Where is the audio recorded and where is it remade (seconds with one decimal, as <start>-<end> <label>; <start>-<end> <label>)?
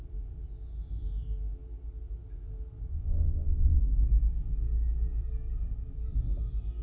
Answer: 0.0-2.9 recorded; 2.9-3.8 remade; 3.8-6.8 recorded